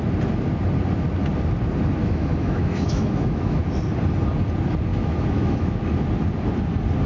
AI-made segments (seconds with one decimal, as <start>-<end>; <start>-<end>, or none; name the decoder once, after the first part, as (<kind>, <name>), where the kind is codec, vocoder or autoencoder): 2.0-3.6 (autoencoder, DAC-VAE); 4.9-5.8